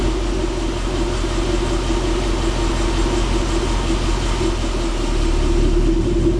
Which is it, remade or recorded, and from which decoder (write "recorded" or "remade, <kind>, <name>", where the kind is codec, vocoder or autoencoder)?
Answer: recorded